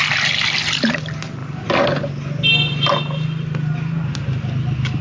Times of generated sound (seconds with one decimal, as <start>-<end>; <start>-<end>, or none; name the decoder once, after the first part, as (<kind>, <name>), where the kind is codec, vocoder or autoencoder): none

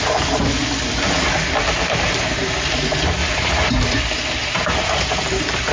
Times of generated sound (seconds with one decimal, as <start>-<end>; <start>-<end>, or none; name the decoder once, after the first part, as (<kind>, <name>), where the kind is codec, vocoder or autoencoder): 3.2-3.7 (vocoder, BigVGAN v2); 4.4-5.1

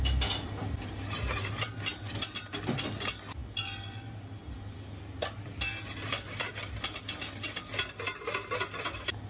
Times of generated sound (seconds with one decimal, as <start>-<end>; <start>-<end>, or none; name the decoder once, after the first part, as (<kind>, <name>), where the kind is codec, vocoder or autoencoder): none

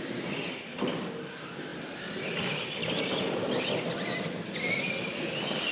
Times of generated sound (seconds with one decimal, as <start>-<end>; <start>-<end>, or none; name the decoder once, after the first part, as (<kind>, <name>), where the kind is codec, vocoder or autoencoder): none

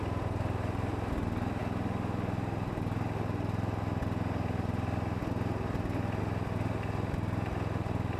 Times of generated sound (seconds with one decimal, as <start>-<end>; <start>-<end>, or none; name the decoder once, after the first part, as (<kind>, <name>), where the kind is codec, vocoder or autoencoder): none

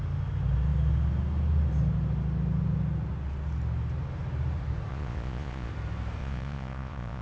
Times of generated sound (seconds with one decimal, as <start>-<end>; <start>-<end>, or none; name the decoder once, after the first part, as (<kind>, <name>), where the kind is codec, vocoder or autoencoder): 4.9-5.7 (vocoder, Vocos); 6.2-7.2

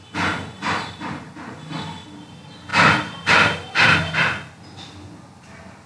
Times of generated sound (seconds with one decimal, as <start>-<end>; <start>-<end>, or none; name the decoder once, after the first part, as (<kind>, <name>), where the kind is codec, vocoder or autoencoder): 2.7-3.3 (vocoder, BigVGAN v2)

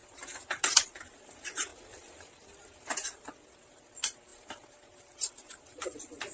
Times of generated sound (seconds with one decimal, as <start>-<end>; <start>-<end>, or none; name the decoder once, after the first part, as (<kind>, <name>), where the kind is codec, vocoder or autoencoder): 0.0-1.0 (vocoder, BigVGAN v2); 1.7-3.5